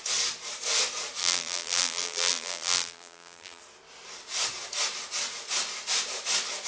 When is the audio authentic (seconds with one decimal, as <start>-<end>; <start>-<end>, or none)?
0.0-1.2; 3.6-6.7